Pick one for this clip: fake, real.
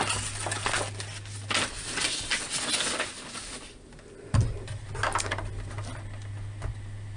real